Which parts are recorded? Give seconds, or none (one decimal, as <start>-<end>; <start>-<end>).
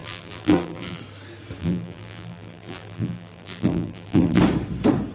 1.0-1.6; 4.4-5.1